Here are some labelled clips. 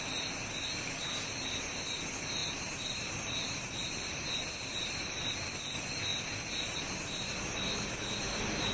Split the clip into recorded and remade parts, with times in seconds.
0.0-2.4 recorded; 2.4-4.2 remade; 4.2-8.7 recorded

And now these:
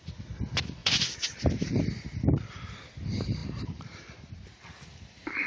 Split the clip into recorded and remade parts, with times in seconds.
0.0-0.8 recorded; 0.8-1.8 remade; 1.8-3.4 recorded; 3.4-4.6 remade; 4.6-5.5 recorded

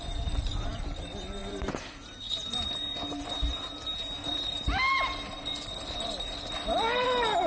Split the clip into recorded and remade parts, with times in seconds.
0.0-7.5 recorded